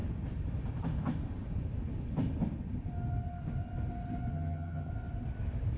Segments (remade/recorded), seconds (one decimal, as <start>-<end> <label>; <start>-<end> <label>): 0.0-4.3 recorded; 4.3-4.9 remade; 4.9-5.8 recorded